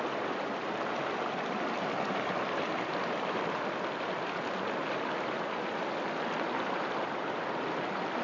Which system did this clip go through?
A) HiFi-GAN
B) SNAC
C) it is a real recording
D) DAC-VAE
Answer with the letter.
C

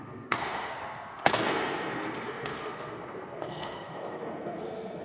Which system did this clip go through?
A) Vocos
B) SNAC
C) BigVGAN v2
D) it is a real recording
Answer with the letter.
B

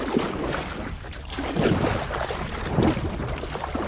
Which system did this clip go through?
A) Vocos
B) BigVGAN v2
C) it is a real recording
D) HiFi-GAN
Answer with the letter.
C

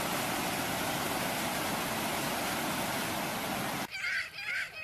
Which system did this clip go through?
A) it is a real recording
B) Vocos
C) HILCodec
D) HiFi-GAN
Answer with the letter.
A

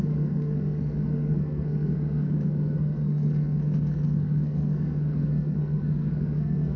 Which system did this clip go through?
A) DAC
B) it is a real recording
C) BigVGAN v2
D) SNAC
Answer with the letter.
D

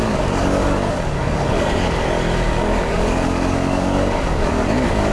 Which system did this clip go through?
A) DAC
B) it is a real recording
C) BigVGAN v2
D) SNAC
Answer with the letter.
A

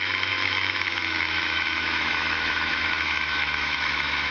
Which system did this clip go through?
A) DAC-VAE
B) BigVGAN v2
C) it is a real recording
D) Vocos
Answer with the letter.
A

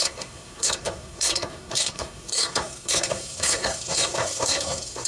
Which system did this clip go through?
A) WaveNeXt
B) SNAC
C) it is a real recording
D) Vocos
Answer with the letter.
B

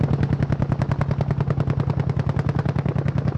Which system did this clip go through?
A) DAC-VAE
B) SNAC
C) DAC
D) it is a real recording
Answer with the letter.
D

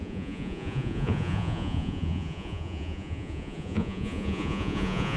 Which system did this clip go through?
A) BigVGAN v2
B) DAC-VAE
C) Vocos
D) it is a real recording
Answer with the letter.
C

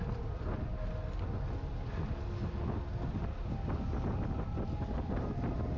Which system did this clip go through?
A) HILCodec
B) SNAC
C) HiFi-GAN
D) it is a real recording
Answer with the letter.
D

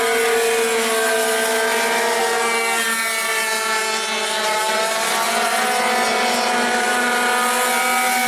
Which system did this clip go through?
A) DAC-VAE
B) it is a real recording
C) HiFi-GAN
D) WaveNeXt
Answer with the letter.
B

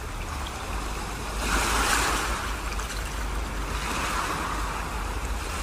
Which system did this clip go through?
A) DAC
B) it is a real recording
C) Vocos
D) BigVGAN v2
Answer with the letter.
B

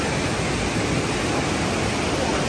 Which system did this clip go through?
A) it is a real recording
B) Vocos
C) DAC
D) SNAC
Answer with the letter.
A